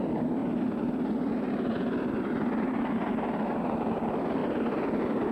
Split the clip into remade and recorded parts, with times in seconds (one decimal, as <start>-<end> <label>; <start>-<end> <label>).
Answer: 0.0-5.3 recorded